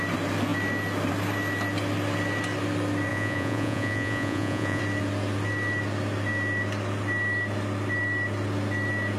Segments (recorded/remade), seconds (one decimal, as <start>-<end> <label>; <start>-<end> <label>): 0.0-3.1 recorded; 3.1-4.8 remade; 4.8-9.2 recorded

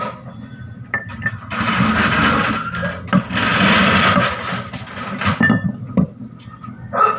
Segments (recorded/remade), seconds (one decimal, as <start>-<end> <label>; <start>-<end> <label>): 0.0-7.2 recorded

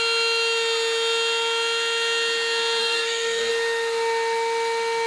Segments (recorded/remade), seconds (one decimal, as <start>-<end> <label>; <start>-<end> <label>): 0.0-2.8 recorded; 2.8-3.5 remade; 3.5-5.1 recorded

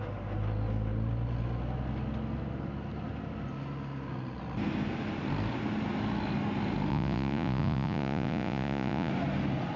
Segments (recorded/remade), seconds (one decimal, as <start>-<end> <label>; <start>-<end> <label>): 0.0-6.9 recorded; 6.9-9.1 remade; 9.1-9.8 recorded